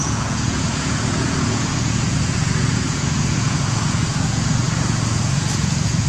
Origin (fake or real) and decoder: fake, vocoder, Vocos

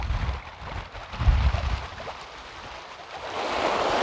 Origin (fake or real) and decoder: real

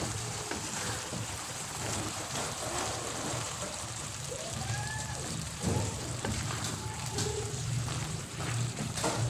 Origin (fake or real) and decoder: fake, vocoder, BigVGAN v2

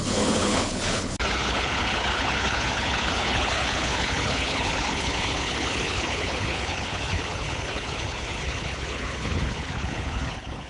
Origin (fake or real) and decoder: fake, codec, HILCodec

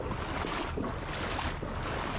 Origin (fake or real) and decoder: real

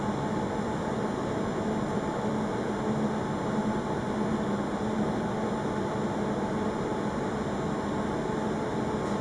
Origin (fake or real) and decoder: real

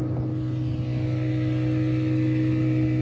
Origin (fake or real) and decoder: real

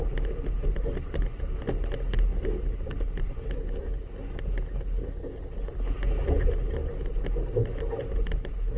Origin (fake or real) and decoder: real